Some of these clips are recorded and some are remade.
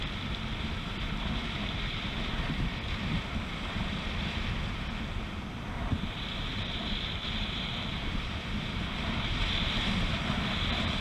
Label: remade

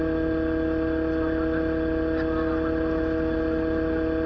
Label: recorded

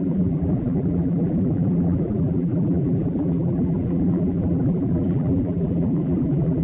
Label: remade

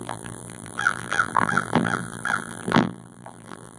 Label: remade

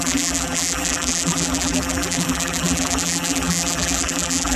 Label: remade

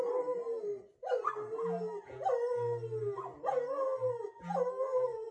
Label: recorded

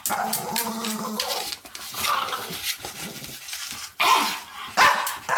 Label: recorded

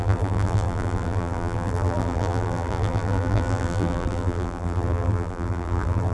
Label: remade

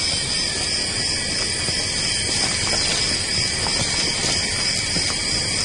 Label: recorded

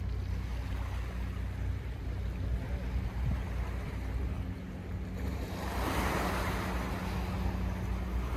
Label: recorded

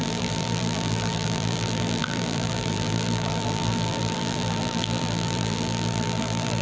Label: remade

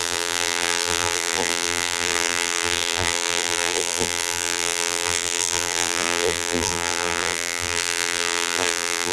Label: remade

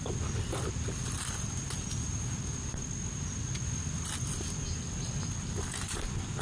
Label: recorded